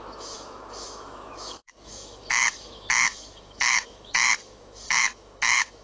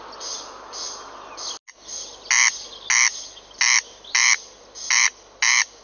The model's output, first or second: first